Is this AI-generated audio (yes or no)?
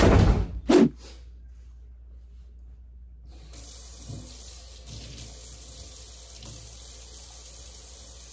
no